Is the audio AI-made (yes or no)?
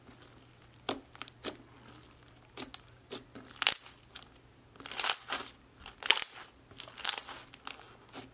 no